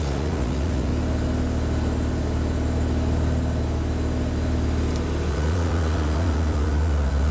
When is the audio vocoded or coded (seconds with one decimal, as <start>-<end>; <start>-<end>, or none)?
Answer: 0.0-0.9; 5.3-7.3